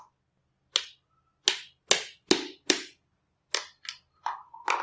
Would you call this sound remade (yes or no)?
no